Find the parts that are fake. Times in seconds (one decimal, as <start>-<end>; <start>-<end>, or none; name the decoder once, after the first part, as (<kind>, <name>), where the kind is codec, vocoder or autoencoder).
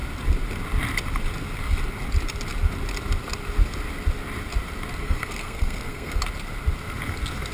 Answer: 5.0-6.2 (codec, SNAC)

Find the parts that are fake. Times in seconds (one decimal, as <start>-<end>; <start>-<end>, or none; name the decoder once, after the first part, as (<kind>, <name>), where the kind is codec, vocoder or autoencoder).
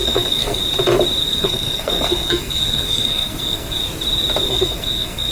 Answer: 0.0-0.6 (codec, SNAC); 1.2-3.8; 4.5-5.3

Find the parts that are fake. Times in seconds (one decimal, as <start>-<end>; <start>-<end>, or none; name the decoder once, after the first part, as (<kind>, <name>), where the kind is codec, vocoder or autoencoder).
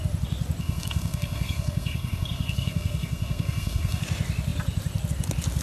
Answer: 0.6-4.0 (codec, SNAC)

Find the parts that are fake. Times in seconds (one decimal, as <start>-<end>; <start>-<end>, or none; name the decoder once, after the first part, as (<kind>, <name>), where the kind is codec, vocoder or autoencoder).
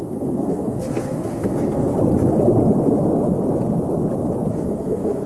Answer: 0.0-1.9 (codec, SNAC); 4.5-5.3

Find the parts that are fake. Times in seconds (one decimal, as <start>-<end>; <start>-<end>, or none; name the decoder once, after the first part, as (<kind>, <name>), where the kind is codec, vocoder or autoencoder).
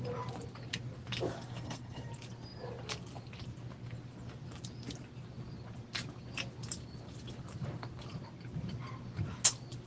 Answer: 1.5-2.1 (codec, SNAC)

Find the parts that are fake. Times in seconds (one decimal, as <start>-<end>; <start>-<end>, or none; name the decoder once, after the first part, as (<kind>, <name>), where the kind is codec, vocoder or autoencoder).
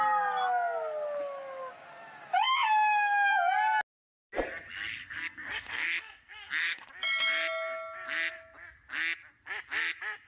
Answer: 5.0-6.9 (codec, SNAC)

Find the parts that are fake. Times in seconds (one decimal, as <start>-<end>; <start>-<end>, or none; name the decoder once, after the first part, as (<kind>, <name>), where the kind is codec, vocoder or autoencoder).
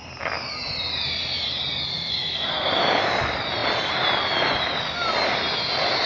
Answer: 1.9-2.7 (codec, SNAC)